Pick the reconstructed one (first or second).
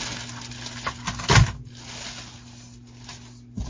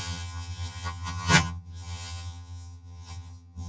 second